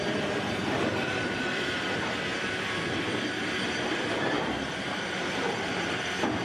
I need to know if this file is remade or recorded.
remade